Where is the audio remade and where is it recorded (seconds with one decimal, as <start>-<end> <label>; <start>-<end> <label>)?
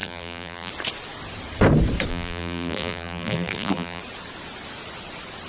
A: 0.0-0.7 remade; 0.7-2.1 recorded; 2.1-4.0 remade; 4.0-5.5 recorded